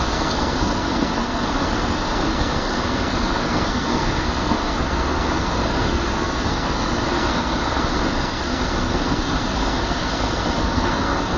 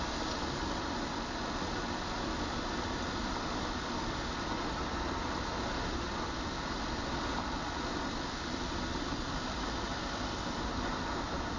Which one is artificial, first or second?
first